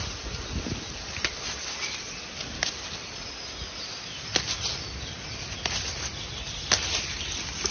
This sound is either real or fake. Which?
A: real